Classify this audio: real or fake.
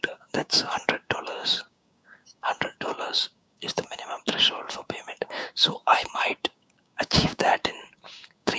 fake